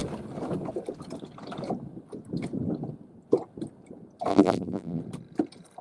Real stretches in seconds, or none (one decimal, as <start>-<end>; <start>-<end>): 0.0-4.3; 5.0-5.8